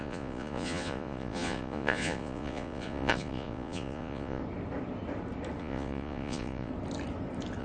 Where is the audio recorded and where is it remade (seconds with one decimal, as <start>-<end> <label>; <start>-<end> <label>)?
0.0-4.4 remade; 4.4-5.6 recorded; 5.6-6.7 remade; 6.7-7.6 recorded